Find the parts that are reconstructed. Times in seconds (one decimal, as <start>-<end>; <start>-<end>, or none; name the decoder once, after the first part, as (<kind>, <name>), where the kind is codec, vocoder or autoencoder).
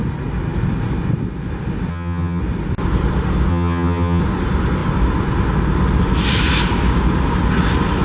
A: 1.9-2.4 (vocoder, HiFi-GAN); 3.5-4.2